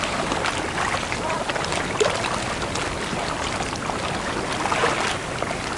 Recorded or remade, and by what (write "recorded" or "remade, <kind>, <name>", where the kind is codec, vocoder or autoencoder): recorded